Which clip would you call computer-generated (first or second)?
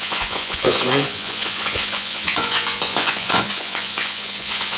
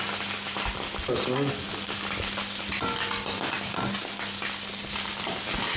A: first